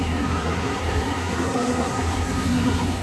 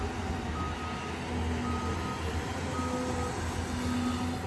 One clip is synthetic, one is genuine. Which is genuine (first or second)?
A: second